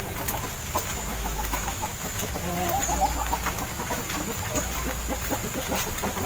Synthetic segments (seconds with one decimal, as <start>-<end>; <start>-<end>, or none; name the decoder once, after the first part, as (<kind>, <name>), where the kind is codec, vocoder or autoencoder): 1.1-2.3 (autoencoder, DAC-VAE)